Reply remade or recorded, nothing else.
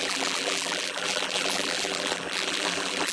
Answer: remade